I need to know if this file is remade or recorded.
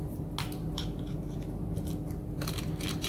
recorded